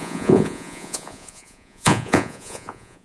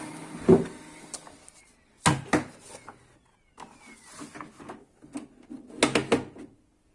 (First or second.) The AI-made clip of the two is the first